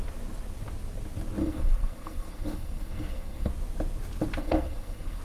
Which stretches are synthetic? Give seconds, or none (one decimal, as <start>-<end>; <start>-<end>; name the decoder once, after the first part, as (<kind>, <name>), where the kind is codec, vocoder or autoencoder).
1.4-3.5 (codec, SNAC); 4.4-5.2

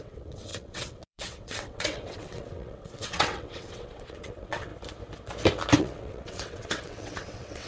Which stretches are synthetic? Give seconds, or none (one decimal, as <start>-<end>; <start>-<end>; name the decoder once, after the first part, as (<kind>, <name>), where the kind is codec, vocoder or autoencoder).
0.0-4.7 (vocoder, WaveNeXt); 5.8-7.7